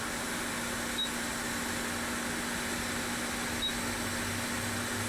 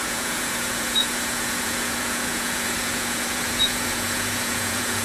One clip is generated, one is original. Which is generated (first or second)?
second